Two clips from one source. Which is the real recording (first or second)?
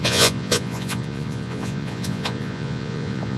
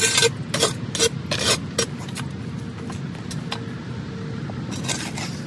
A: second